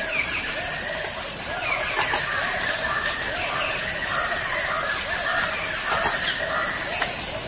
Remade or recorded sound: recorded